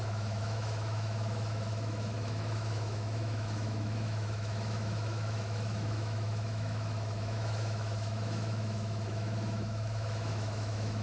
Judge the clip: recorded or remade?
remade